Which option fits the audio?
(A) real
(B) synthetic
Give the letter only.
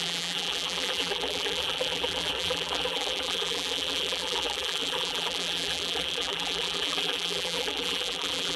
B